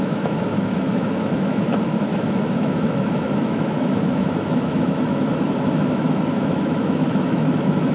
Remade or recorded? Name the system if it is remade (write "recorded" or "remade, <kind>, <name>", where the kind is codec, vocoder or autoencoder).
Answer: remade, autoencoder, DAC-VAE